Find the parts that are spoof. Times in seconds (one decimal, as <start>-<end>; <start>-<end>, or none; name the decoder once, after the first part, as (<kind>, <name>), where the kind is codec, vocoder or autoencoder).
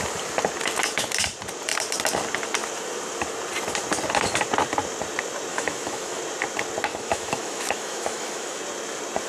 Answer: 5.5-6.2 (autoencoder, DAC-VAE); 6.9-8.6